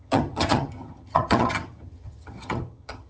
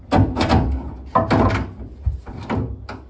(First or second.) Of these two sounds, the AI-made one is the first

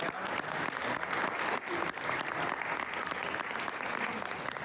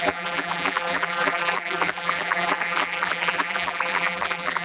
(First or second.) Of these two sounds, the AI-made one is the second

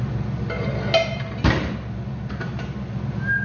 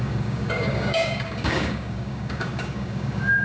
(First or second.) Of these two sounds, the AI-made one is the second